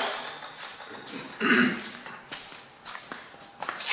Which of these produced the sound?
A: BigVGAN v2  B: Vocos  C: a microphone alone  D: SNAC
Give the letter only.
C